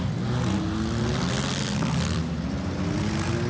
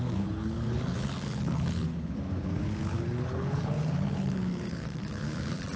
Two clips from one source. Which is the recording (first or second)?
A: first